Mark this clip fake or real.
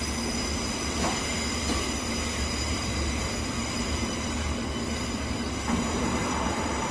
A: real